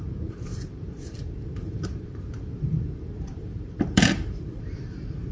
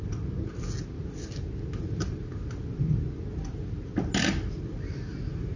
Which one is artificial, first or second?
first